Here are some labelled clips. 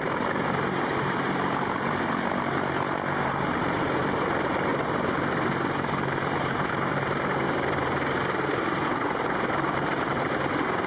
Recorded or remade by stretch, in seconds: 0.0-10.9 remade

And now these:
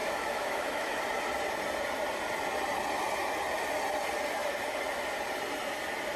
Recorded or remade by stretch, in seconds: 0.0-1.0 remade; 1.0-6.2 recorded